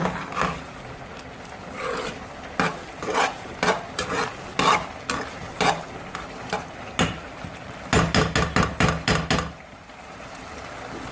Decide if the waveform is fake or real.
real